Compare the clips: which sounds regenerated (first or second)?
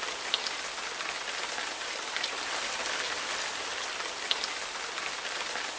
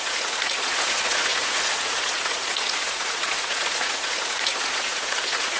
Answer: second